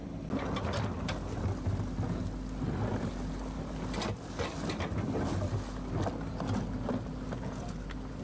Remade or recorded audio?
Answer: recorded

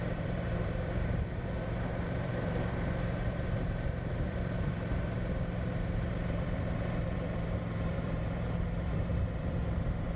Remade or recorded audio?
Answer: remade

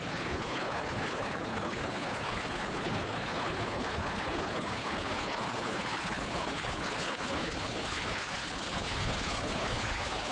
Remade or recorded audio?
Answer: remade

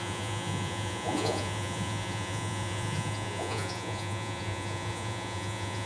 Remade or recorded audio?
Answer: remade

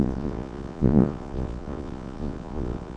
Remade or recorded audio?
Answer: remade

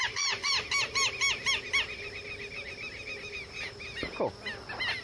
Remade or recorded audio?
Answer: recorded